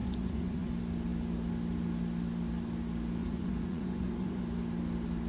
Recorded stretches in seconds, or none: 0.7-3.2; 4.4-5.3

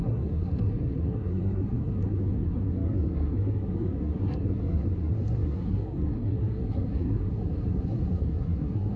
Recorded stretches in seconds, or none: none

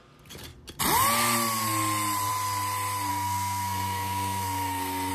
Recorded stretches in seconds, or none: 0.0-3.1

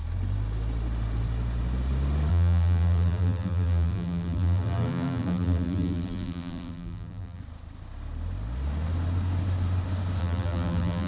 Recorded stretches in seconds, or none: 0.0-2.3; 7.4-10.2

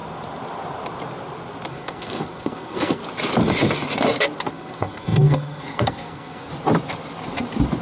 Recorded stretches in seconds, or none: 0.0-1.7; 3.0-4.5; 6.5-7.8